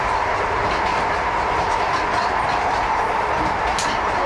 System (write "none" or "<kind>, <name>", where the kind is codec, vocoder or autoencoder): none